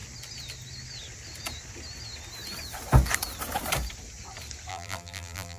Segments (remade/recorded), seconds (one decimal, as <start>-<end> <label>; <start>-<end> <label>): 0.0-4.7 recorded; 4.7-5.6 remade